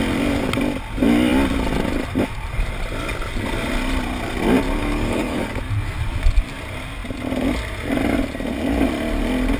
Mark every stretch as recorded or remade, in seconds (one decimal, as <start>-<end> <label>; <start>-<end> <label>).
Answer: 0.0-4.8 recorded; 4.8-5.6 remade; 5.6-9.6 recorded